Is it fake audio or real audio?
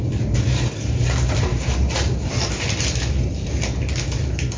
real